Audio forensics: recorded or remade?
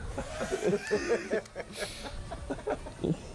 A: recorded